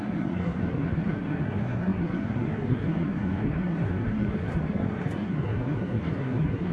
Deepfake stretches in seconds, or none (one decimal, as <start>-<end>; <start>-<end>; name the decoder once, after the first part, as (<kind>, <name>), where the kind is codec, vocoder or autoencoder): 0.0-6.7 (codec, SNAC)